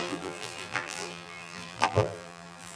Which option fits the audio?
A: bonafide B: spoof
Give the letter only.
B